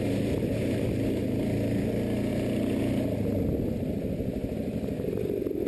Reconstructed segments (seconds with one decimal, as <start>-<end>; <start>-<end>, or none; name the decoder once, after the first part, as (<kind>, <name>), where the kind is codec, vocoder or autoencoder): none